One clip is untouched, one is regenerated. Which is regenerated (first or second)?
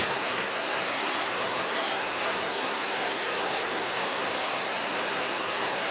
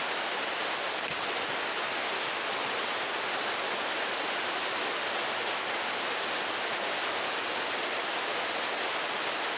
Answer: first